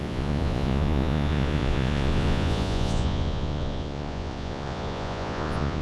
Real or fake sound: fake